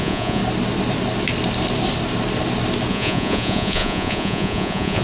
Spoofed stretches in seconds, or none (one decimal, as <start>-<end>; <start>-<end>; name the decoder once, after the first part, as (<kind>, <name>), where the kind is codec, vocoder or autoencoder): 0.0-0.4 (vocoder, Vocos); 2.9-5.0